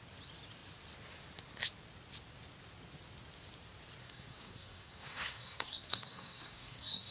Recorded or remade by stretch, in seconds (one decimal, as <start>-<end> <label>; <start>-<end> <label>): 0.0-4.0 recorded; 4.0-7.1 remade